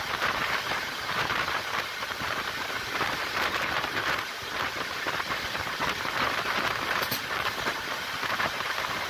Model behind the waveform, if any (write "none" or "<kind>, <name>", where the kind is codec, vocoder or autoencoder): vocoder, BigVGAN v2